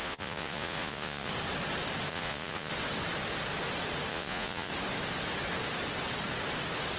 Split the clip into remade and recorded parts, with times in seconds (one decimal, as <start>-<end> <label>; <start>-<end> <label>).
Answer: 0.0-1.3 remade; 1.3-2.1 recorded; 2.1-2.7 remade; 2.7-4.1 recorded; 4.1-4.7 remade; 4.7-7.0 recorded